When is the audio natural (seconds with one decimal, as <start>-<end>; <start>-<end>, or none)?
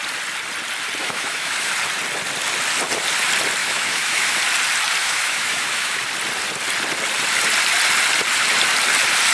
0.0-1.0; 1.7-3.6; 4.4-5.0; 6.0-9.3